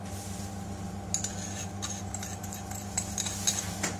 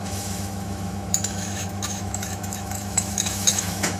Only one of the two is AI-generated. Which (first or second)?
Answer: second